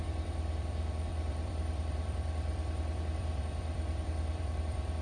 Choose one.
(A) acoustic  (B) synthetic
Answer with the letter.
B